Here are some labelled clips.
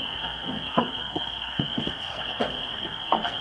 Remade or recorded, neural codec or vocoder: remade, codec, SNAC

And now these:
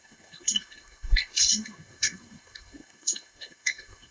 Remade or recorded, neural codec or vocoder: remade, codec, SNAC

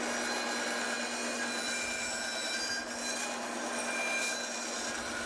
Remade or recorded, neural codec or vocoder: recorded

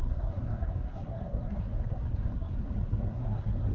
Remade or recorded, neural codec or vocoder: remade, codec, SNAC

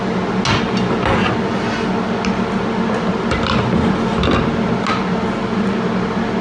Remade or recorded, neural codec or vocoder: recorded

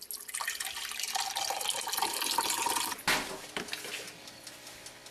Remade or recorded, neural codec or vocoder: recorded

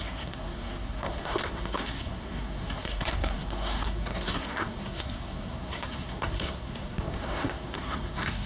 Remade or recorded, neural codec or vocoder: remade, codec, SNAC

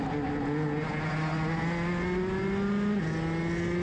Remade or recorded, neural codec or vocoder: recorded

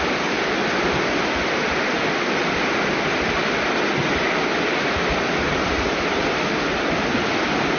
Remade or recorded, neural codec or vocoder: recorded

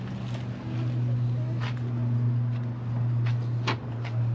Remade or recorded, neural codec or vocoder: recorded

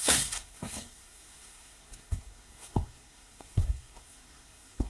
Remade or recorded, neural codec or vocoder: remade, codec, SNAC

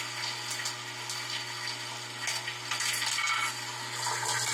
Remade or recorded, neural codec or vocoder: recorded